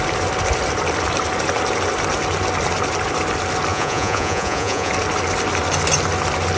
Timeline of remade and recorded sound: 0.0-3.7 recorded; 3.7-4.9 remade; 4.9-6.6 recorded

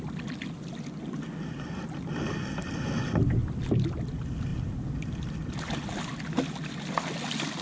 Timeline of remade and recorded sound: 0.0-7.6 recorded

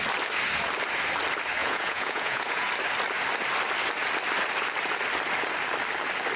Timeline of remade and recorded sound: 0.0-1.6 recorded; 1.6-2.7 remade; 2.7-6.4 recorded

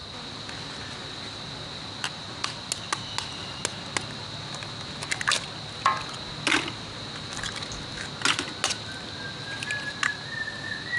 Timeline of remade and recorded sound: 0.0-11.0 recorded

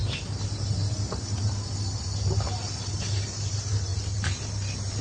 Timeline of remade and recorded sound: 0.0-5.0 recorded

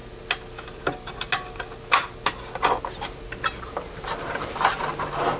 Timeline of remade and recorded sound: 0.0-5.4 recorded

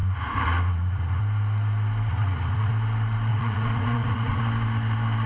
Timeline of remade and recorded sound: 0.0-1.2 remade; 1.2-2.1 recorded; 2.1-2.7 remade; 2.7-3.3 recorded; 3.3-4.4 remade; 4.4-5.3 recorded

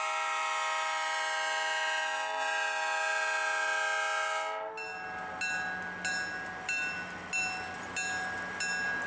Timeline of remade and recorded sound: 0.0-9.1 recorded